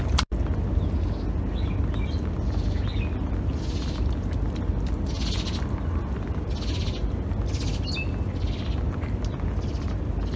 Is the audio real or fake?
real